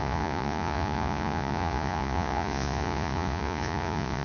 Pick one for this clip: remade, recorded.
remade